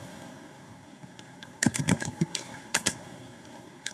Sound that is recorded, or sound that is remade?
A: remade